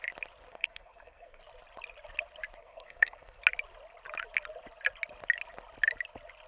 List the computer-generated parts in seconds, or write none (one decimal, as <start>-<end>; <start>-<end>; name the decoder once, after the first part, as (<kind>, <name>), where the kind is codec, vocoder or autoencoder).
0.5-1.4 (codec, SNAC); 2.6-3.4